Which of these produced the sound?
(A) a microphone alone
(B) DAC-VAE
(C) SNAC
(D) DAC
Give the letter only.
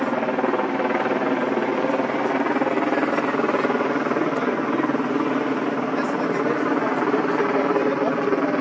A